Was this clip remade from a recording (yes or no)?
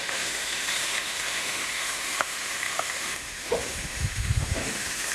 yes